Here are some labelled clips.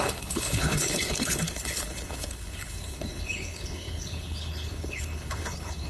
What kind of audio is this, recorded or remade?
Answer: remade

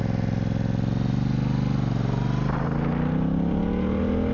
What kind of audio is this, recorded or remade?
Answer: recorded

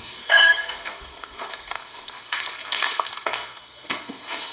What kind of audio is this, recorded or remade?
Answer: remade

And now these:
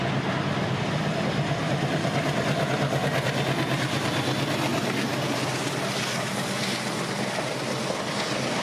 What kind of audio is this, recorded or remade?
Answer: recorded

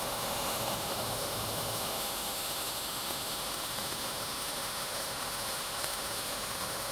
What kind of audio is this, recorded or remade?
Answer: remade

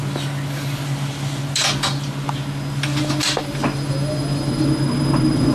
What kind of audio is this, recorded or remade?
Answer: recorded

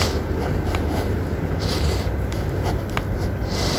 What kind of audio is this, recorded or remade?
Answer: recorded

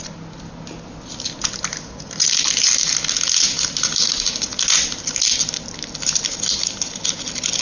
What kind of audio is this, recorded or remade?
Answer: recorded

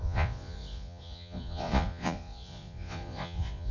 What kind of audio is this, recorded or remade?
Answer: remade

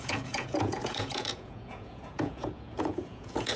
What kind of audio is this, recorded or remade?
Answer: remade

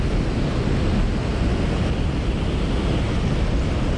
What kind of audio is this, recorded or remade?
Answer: recorded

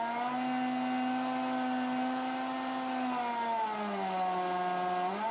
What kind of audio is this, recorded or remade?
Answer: recorded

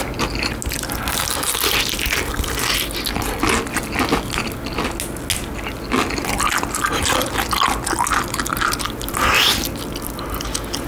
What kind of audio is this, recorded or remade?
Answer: recorded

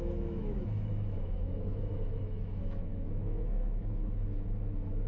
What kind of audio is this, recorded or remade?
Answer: remade